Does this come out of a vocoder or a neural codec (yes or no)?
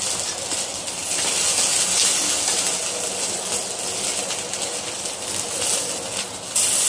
no